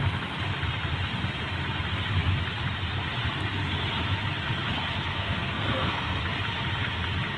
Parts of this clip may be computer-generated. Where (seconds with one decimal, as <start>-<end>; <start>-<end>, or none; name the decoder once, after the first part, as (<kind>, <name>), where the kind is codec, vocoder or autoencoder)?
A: 5.1-6.2 (codec, SNAC)